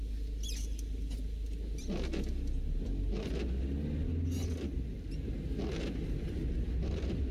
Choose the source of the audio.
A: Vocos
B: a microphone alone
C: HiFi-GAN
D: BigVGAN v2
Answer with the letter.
B